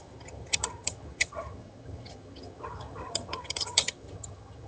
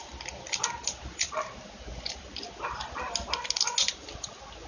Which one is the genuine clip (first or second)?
second